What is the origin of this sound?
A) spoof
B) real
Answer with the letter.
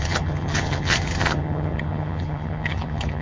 A